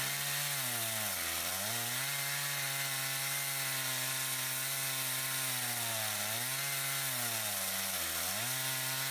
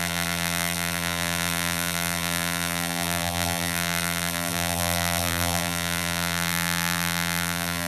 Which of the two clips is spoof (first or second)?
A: second